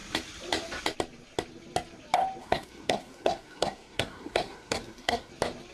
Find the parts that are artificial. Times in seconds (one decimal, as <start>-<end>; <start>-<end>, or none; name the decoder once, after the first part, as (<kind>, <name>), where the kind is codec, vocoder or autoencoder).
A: 2.4-5.3 (codec, SNAC)